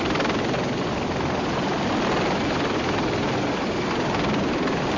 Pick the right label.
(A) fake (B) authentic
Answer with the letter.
B